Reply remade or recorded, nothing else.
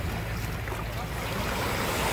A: recorded